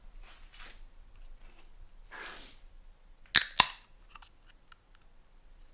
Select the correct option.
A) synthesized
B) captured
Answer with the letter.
B